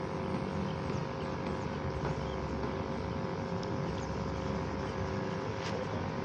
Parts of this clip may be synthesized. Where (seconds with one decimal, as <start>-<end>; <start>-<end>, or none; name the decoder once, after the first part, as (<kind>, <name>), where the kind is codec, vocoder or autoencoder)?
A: none